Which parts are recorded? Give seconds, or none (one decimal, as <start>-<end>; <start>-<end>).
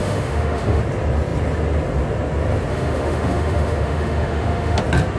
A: 0.8-2.7; 4.8-5.2